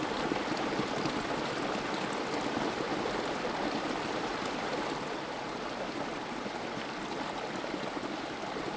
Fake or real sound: real